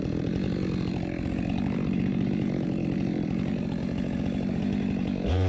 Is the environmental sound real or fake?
fake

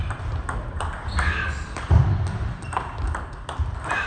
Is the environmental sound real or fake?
real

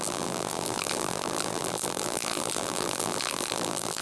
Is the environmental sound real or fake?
fake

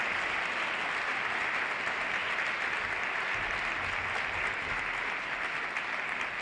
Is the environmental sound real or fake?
real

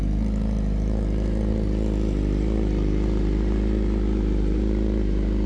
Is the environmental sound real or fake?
fake